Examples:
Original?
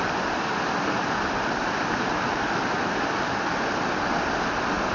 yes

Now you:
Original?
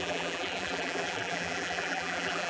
no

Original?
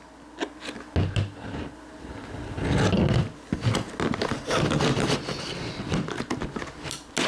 yes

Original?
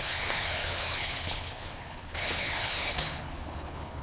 no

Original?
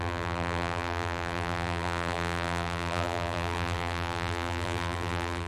no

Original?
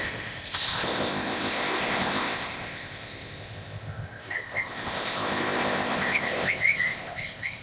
no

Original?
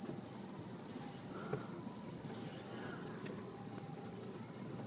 no